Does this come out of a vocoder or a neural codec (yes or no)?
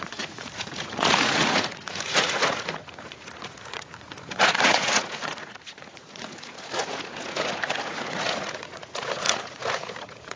yes